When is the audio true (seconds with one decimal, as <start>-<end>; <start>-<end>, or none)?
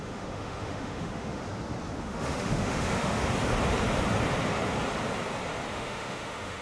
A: 1.4-2.0; 3.3-5.7